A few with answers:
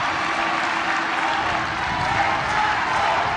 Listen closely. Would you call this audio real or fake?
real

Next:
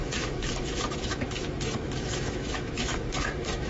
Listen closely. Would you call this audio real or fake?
fake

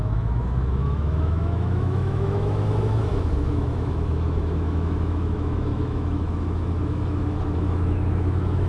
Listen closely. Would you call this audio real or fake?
fake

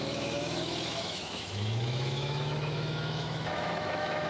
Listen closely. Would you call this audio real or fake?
fake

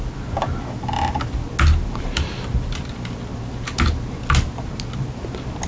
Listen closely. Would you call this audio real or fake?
real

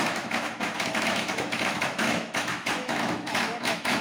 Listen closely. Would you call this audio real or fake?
fake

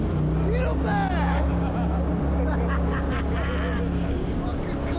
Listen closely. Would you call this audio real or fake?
real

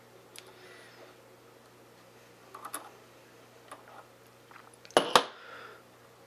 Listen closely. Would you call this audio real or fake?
real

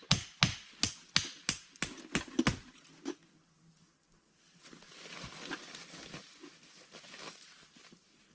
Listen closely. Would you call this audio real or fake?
real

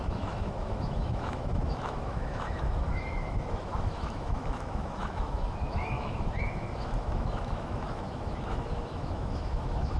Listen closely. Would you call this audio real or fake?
fake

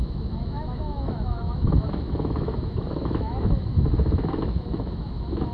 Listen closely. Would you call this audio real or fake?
fake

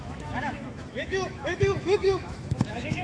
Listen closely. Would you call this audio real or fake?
fake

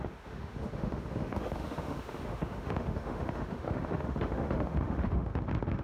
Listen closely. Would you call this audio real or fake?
fake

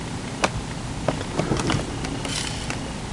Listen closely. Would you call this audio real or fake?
real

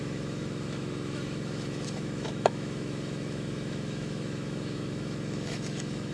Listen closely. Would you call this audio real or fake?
fake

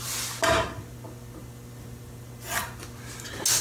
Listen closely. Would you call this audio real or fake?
real